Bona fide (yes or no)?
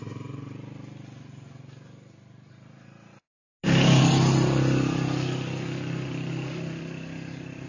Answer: yes